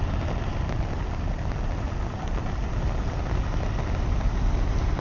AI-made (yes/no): no